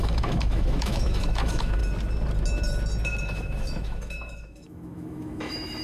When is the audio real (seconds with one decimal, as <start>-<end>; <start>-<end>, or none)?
1.8-3.2